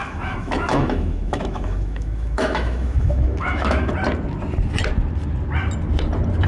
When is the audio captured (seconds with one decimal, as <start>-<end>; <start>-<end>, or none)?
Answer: 3.9-6.5